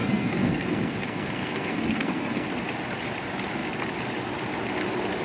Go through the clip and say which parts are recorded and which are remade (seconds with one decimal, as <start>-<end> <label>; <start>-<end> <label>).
0.0-2.5 remade; 2.5-5.2 recorded